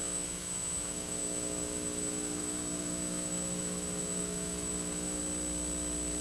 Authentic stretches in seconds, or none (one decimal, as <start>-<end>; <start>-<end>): 5.2-6.2